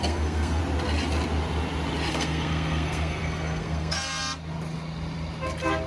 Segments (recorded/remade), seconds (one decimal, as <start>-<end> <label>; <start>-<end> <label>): 0.0-0.6 remade; 0.6-2.1 recorded; 2.1-4.2 remade; 4.2-5.9 recorded